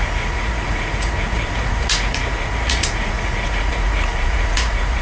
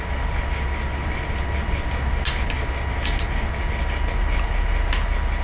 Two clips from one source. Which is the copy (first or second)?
first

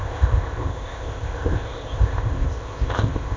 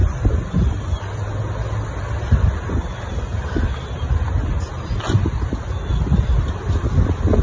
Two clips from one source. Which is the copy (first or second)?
first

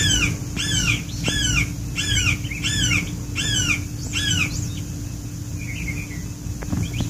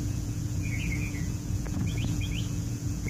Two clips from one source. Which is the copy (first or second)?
second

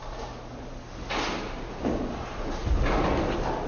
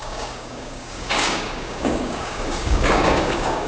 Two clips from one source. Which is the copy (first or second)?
second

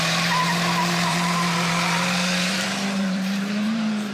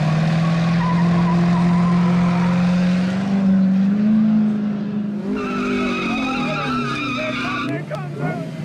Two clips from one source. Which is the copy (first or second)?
first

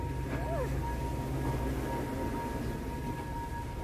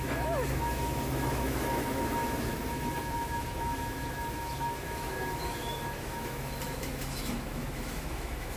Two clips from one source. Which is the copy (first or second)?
second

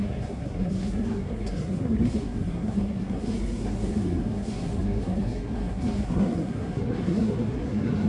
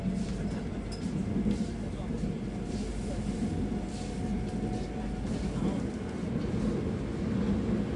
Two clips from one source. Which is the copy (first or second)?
first